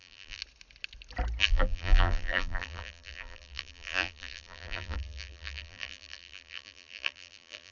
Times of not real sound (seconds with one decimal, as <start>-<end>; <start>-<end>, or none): 0.0-0.4; 1.4-7.7